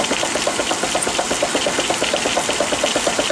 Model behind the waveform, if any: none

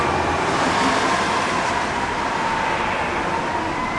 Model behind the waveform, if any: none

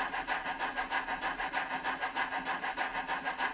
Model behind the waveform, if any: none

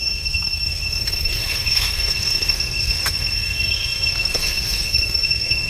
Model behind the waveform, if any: codec, SNAC